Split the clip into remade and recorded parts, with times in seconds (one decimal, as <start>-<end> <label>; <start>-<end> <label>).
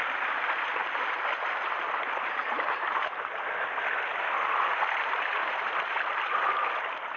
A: 0.0-7.2 recorded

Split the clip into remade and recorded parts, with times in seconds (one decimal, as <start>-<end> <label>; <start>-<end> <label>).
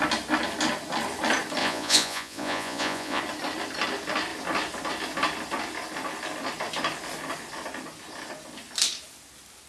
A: 0.0-1.6 recorded; 1.6-3.2 remade; 3.2-9.7 recorded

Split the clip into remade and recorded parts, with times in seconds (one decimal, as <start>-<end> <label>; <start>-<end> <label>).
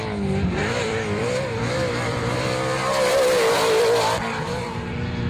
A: 0.0-0.6 recorded; 0.6-3.8 remade; 3.8-5.3 recorded